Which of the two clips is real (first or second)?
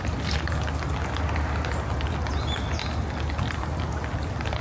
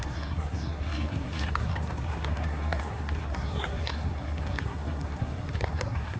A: first